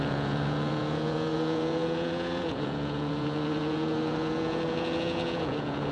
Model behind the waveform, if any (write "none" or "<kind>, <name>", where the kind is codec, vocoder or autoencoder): vocoder, Vocos